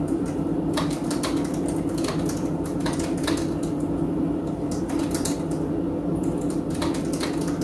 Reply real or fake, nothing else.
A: real